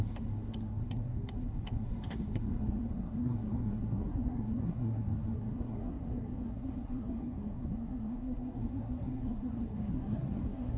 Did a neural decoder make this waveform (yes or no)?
yes